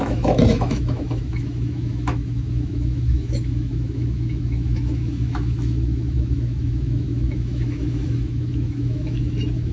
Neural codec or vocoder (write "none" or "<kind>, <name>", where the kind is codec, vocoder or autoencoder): autoencoder, DAC-VAE